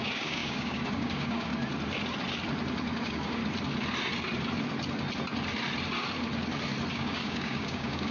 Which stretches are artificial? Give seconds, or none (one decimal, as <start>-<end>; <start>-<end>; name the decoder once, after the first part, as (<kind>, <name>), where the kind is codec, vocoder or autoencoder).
0.0-1.5 (codec, DAC); 3.0-3.4; 6.9-8.1